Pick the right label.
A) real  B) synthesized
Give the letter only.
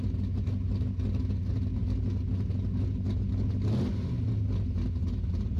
A